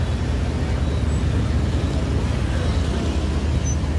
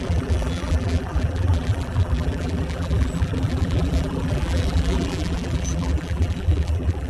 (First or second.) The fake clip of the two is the second